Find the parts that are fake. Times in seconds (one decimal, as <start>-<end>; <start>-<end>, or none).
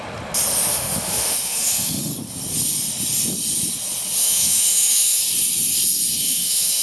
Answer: 0.7-2.1; 4.2-5.2; 6.2-6.8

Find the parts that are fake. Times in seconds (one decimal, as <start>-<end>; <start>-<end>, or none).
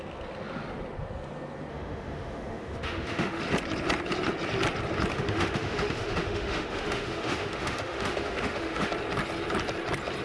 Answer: 1.7-3.4; 5.1-8.9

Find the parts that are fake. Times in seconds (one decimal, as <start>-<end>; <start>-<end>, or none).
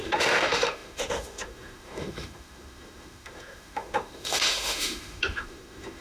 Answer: 0.0-6.0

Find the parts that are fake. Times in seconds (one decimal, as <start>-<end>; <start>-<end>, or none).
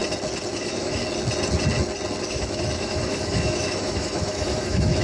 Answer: 0.5-1.0; 2.2-5.0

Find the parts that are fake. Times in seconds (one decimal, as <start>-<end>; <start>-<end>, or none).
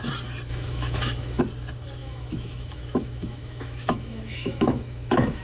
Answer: 0.5-1.4; 2.0-5.4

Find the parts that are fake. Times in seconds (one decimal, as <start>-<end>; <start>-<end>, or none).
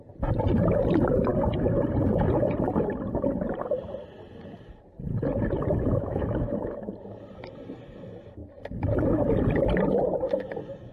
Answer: 5.9-6.9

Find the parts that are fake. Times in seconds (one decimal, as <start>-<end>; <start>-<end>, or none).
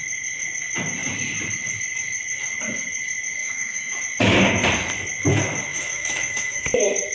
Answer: 3.4-4.0; 5.7-6.6